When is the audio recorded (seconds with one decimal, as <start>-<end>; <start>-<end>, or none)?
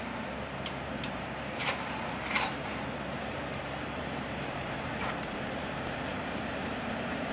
none